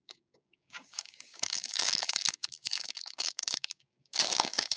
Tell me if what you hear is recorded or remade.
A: remade